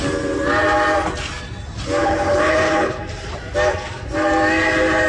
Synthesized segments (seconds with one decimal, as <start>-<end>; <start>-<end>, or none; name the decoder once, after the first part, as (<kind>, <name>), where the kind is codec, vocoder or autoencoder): 2.0-3.0 (codec, HILCodec)

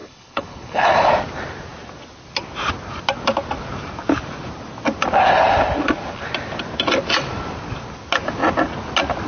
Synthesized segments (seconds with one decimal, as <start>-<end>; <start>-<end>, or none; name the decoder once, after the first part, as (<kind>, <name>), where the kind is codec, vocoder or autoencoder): 0.0-1.1 (codec, HILCodec)